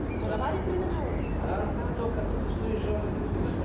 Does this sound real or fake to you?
real